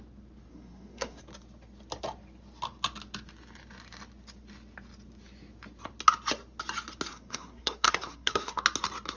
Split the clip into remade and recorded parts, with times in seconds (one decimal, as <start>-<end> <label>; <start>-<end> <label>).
0.0-0.5 recorded; 0.5-1.2 remade; 1.2-7.1 recorded; 7.1-8.6 remade; 8.6-9.2 recorded